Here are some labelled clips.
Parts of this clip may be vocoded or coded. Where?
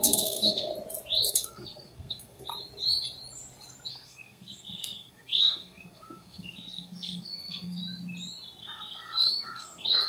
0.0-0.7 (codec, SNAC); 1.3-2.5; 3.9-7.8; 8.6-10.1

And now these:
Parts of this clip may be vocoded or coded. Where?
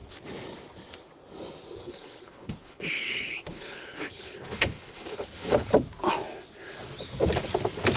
1.8-5.7 (codec, HILCodec)